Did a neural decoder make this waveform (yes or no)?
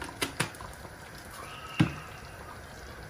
no